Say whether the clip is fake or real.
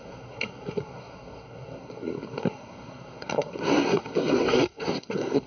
fake